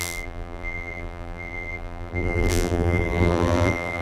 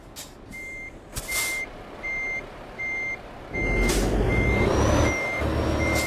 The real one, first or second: second